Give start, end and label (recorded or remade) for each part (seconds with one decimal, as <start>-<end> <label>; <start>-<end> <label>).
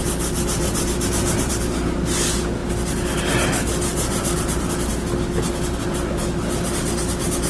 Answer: 0.0-7.5 recorded